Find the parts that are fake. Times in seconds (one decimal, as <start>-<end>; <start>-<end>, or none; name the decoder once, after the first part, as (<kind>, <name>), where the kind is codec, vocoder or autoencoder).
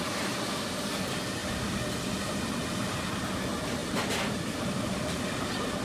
3.8-4.9 (vocoder, BigVGAN v2)